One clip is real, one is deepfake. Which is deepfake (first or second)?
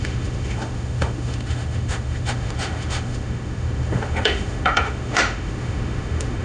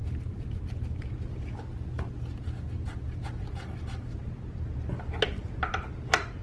first